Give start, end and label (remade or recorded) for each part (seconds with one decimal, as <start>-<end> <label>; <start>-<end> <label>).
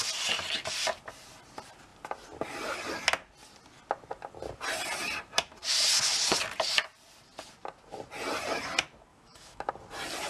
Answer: 0.0-9.1 recorded; 9.1-9.7 remade; 9.7-10.3 recorded